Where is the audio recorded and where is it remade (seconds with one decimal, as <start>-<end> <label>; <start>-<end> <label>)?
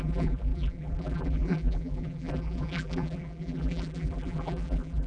0.0-5.1 remade